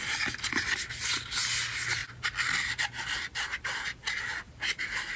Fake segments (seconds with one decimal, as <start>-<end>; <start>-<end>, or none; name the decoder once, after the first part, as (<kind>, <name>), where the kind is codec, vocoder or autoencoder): none